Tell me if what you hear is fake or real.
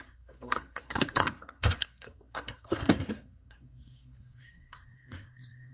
fake